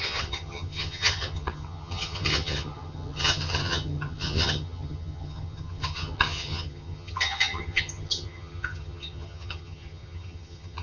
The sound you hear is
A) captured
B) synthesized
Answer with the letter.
B